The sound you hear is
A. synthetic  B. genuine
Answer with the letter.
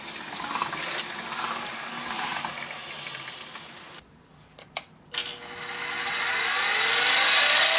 B